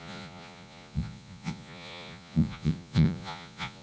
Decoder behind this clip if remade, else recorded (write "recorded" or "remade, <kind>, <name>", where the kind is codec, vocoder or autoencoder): remade, vocoder, Vocos